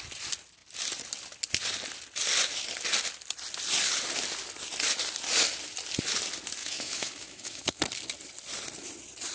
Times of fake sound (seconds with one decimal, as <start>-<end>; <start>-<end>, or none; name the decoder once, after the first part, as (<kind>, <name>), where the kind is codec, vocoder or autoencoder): 6.6-7.8 (autoencoder, DAC-VAE)